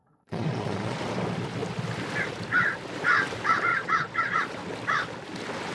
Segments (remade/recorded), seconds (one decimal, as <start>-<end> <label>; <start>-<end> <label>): 0.0-1.0 remade; 1.0-3.7 recorded; 3.7-4.5 remade; 4.5-5.7 recorded